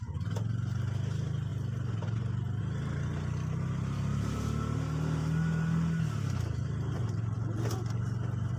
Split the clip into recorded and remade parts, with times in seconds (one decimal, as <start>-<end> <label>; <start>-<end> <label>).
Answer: 0.0-8.6 recorded